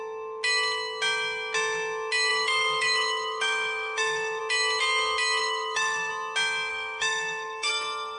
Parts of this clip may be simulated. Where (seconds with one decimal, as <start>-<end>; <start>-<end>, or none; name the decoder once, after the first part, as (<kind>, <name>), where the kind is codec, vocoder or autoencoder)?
2.3-4.4 (autoencoder, DAC-VAE); 5.4-6.1; 6.7-7.7